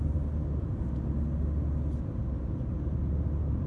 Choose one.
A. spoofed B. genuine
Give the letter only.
B